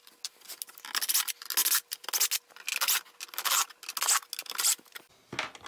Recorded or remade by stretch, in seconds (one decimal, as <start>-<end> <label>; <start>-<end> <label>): 0.0-5.7 recorded